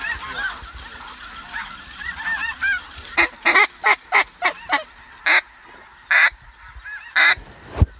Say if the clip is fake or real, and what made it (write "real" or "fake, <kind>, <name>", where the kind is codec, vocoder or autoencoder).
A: real